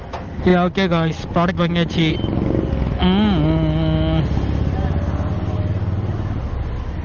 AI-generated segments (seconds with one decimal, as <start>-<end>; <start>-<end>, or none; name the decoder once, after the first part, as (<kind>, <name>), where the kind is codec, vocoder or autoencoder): none